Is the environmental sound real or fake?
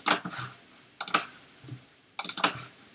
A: real